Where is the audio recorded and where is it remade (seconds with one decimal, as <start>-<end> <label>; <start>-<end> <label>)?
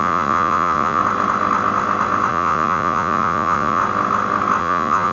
0.0-1.0 remade; 1.0-2.3 recorded; 2.3-3.8 remade; 3.8-4.6 recorded; 4.6-5.1 remade